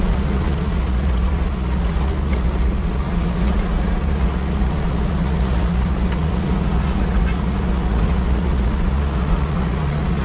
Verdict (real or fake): fake